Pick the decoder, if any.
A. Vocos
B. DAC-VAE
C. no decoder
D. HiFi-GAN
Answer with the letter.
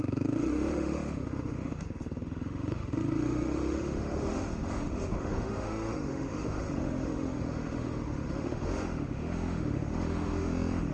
B